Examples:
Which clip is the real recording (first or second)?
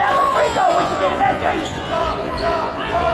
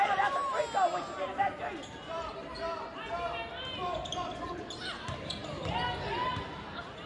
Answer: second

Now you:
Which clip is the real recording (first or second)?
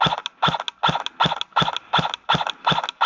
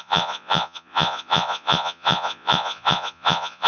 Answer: first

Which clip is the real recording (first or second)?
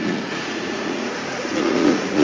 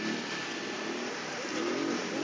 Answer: second